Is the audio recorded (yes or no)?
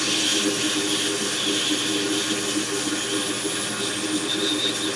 yes